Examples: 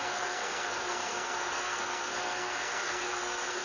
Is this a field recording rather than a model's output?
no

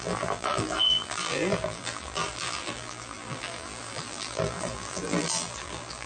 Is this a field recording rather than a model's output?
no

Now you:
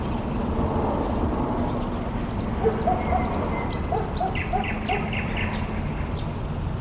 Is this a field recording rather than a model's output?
yes